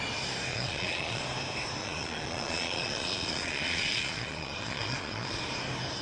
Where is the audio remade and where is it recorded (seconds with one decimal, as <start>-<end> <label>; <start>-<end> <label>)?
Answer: 0.0-0.5 recorded; 0.5-1.2 remade; 1.2-1.8 recorded; 1.8-5.4 remade; 5.4-6.0 recorded